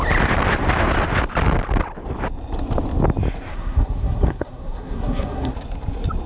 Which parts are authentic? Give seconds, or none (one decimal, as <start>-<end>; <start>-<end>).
0.0-3.5; 5.5-6.3